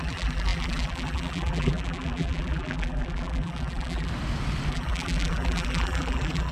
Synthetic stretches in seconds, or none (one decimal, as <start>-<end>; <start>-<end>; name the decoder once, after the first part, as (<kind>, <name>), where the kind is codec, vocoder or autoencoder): 0.0-4.1 (vocoder, BigVGAN v2); 4.7-6.5